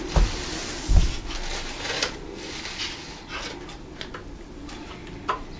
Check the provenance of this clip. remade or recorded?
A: recorded